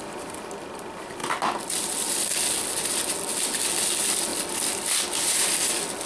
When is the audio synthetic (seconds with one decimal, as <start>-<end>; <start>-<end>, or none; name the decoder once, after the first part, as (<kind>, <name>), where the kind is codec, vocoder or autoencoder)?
none